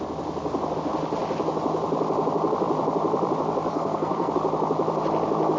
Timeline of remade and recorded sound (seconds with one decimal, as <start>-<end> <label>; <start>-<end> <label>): 0.0-3.7 recorded; 3.7-4.3 remade; 4.3-5.6 recorded